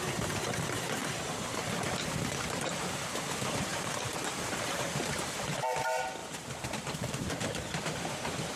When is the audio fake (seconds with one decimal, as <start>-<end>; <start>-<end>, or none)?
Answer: 3.7-5.6; 6.2-7.3